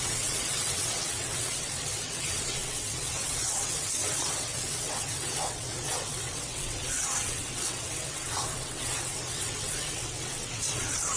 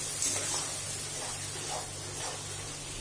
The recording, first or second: second